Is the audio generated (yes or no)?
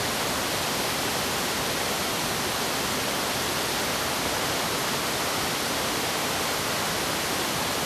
no